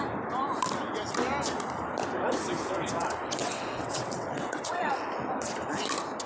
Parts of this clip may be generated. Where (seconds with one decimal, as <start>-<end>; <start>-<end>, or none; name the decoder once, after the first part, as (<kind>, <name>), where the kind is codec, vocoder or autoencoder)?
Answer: 3.4-4.9 (vocoder, WaveNeXt)